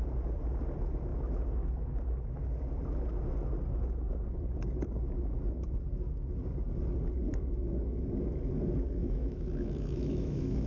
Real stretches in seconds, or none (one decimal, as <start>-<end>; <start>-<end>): 0.0-9.0